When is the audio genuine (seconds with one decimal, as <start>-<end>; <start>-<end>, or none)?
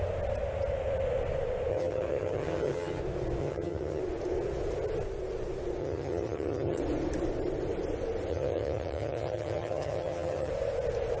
0.0-1.7; 3.0-3.4; 4.0-5.8; 6.8-8.3; 10.5-11.2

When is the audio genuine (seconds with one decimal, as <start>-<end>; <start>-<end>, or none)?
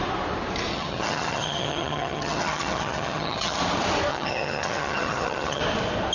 0.0-0.7; 3.6-4.1; 5.6-6.1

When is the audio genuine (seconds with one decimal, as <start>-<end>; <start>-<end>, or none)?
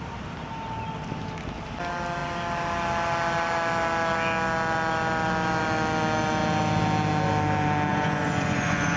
0.0-7.9